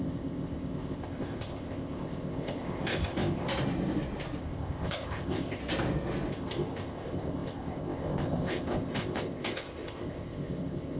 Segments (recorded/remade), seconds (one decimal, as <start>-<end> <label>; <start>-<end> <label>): 0.0-3.5 remade; 3.5-4.4 recorded; 4.4-5.6 remade; 5.6-6.3 recorded; 6.3-11.0 remade

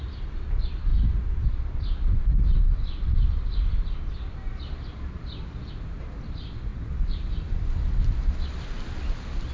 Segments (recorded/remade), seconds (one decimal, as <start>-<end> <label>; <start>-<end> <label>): 0.0-9.5 recorded

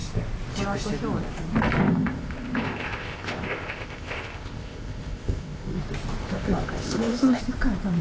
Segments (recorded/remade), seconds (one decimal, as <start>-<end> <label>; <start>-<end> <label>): 0.0-1.8 recorded; 1.8-5.8 remade; 5.8-6.2 recorded; 6.2-7.4 remade; 7.4-8.0 recorded

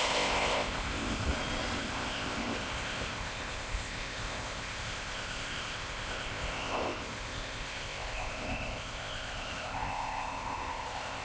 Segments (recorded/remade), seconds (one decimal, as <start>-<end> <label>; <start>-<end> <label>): 0.0-1.3 remade; 1.3-1.8 recorded; 1.8-11.2 remade

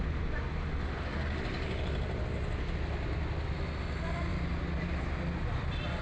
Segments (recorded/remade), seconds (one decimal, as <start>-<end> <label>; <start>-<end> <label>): 0.0-6.0 recorded

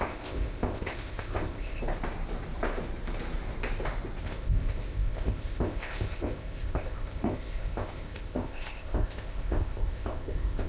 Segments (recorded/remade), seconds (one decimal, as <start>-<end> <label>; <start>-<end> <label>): 0.0-1.8 remade; 1.8-4.2 recorded; 4.2-10.7 remade

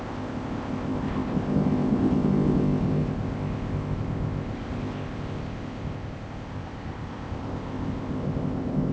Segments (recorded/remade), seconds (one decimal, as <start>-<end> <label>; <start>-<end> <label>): 0.0-8.9 remade

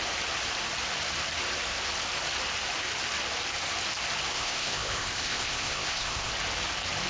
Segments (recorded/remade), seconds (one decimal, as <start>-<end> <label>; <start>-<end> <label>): 0.0-4.3 recorded; 4.3-6.3 remade; 6.3-7.1 recorded